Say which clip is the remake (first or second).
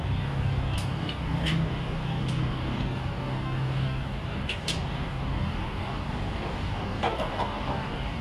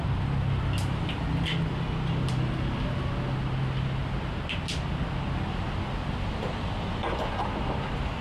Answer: first